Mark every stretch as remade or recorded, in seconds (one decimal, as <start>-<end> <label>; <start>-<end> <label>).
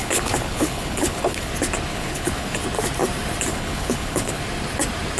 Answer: 0.0-1.5 remade; 1.5-1.9 recorded; 1.9-2.6 remade; 2.6-3.5 recorded; 3.5-4.4 remade; 4.4-5.2 recorded